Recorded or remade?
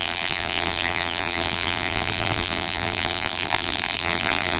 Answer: remade